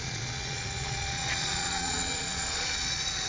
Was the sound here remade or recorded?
remade